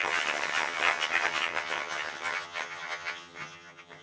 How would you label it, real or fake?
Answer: fake